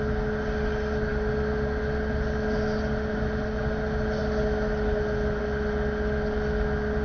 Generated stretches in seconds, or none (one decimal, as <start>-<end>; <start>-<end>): none